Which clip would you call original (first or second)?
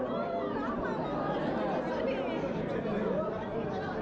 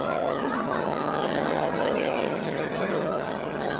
first